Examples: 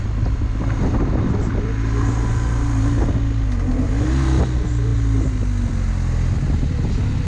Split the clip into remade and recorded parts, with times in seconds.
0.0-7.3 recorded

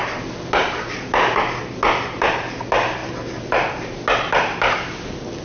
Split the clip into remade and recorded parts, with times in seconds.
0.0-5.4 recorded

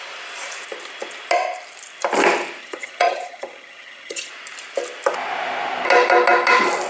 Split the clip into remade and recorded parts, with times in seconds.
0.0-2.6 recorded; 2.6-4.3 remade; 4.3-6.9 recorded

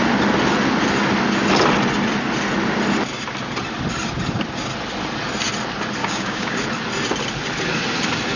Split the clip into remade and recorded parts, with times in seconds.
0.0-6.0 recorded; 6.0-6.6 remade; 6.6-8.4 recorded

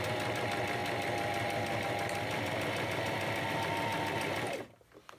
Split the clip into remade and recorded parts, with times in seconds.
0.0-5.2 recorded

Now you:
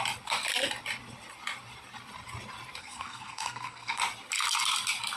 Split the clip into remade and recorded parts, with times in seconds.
0.0-2.8 recorded; 2.8-4.0 remade; 4.0-5.2 recorded

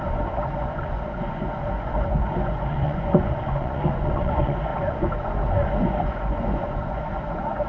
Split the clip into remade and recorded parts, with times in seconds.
0.0-7.7 remade